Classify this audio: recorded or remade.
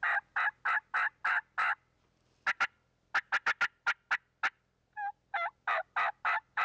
recorded